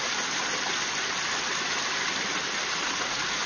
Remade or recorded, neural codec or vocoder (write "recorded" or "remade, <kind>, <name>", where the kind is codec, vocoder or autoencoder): recorded